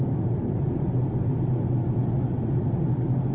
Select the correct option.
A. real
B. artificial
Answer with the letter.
A